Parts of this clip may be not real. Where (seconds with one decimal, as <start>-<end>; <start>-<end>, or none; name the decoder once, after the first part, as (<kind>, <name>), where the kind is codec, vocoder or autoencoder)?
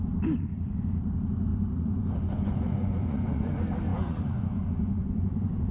1.5-3.5 (vocoder, Vocos); 3.9-5.7